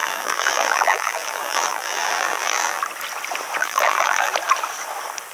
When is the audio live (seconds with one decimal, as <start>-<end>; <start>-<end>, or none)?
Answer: 2.8-3.6; 4.3-5.3